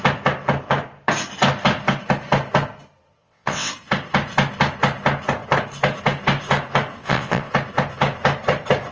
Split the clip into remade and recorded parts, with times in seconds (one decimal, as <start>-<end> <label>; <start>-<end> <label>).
0.0-3.2 recorded; 3.2-3.7 remade; 3.7-7.0 recorded; 7.0-7.5 remade; 7.5-8.9 recorded

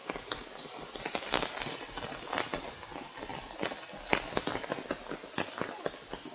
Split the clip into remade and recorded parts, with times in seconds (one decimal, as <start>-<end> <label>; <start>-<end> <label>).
0.0-6.3 recorded

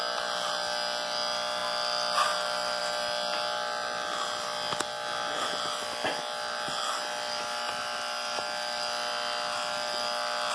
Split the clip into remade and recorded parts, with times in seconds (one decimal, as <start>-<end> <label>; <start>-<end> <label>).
0.0-10.5 recorded

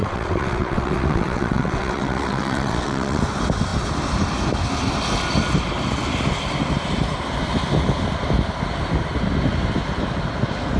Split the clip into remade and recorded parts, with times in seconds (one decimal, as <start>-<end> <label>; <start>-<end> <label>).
0.0-3.2 remade; 3.2-10.8 recorded

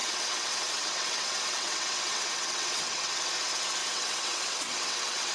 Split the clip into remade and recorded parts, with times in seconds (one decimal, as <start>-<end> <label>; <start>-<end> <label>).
0.0-3.2 remade; 3.2-3.8 recorded; 3.8-5.3 remade

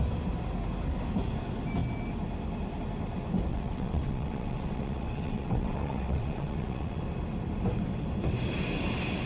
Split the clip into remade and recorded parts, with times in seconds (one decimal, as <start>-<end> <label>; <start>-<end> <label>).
0.0-3.5 recorded; 3.5-7.0 remade; 7.0-9.3 recorded